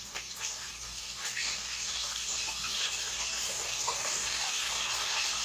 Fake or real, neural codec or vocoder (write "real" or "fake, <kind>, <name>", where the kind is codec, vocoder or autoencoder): fake, codec, DAC